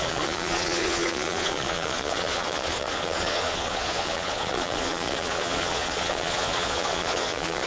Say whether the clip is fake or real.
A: fake